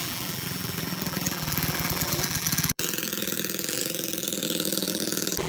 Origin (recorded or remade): remade